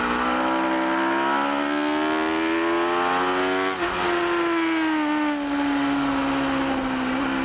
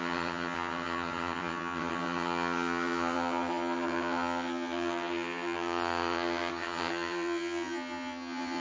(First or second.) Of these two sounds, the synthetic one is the second